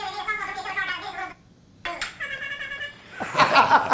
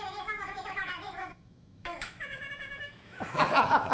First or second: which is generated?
second